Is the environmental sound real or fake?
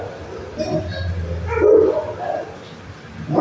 real